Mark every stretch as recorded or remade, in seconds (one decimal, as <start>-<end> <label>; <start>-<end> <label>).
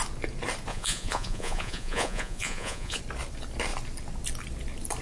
0.0-0.7 recorded; 0.7-3.0 remade; 3.0-5.0 recorded